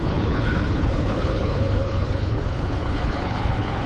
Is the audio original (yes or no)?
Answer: no